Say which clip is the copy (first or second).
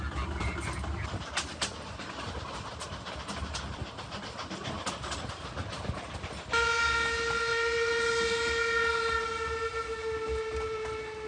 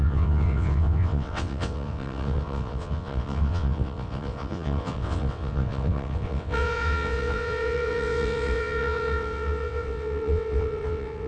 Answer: second